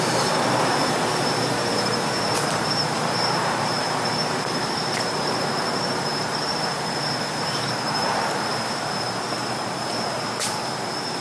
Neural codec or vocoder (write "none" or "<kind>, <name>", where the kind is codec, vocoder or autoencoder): vocoder, BigVGAN v2